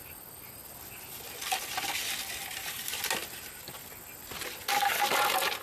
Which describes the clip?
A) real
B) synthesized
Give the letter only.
A